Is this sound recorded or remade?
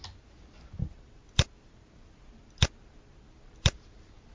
recorded